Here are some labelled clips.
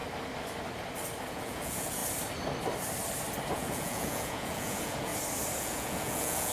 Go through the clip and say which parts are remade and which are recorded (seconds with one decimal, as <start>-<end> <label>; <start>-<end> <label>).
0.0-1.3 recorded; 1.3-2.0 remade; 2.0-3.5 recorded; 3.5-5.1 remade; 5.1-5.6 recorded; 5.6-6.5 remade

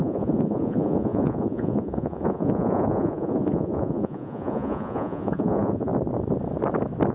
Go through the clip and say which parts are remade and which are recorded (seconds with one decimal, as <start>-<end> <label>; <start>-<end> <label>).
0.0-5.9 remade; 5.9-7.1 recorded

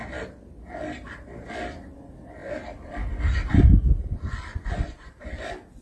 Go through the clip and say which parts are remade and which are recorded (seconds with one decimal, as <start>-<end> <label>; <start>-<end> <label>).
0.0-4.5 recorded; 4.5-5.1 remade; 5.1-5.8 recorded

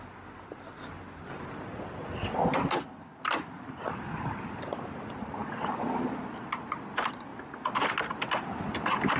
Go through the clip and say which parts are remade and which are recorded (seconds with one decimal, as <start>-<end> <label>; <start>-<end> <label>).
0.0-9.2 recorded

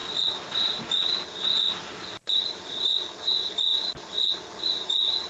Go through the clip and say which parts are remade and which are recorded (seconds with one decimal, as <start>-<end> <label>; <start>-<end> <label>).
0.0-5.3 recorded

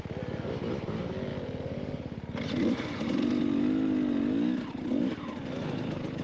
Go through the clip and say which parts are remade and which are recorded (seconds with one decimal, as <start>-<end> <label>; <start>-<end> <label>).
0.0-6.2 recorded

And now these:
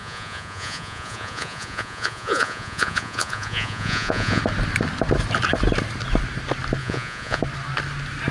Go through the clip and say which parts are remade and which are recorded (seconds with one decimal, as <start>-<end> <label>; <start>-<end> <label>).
0.0-4.4 remade; 4.4-6.8 recorded; 6.8-7.4 remade; 7.4-8.3 recorded

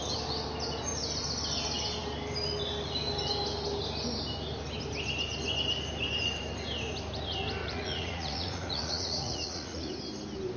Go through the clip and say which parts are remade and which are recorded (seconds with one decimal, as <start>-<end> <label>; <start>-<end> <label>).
0.0-7.6 recorded; 7.6-9.9 remade; 9.9-10.6 recorded